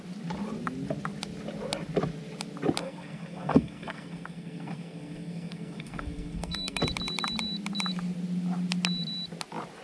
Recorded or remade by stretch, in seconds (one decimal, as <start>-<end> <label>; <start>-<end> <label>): 0.0-2.8 recorded; 2.8-6.8 remade; 6.8-9.8 recorded